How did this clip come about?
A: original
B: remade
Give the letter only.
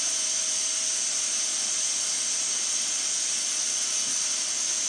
B